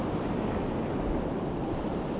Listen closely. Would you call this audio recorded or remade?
recorded